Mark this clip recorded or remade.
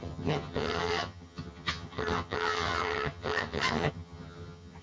remade